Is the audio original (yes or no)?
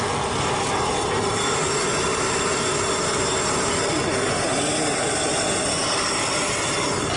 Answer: yes